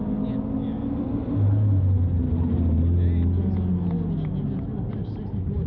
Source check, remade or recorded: recorded